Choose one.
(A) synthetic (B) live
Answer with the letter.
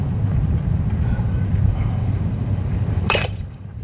A